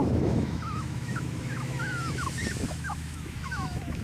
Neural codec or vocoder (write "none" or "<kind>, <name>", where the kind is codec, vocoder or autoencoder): autoencoder, DAC-VAE